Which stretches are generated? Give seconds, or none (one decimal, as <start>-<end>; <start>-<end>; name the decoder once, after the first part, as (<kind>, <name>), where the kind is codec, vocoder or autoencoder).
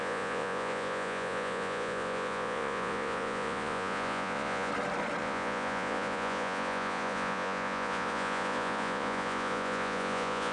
0.0-4.7 (vocoder, Vocos); 5.2-10.5